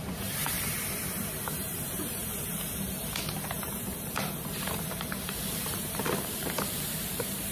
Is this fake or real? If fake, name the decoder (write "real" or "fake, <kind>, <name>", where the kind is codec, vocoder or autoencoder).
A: fake, vocoder, BigVGAN v2